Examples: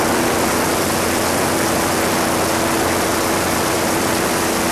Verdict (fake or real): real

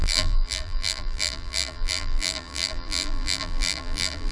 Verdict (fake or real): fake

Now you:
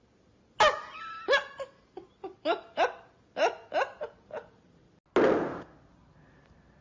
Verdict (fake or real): real